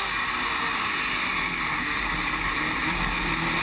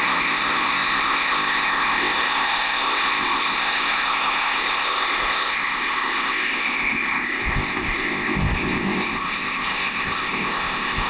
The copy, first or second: second